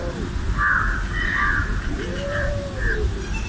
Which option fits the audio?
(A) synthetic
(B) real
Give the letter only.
B